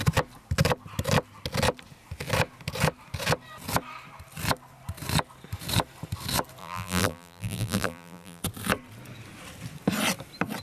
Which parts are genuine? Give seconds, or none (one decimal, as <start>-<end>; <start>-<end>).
0.0-6.6; 8.4-10.6